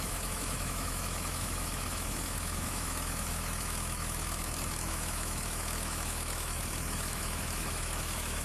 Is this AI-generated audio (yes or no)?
yes